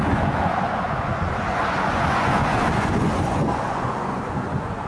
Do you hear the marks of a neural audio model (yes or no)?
yes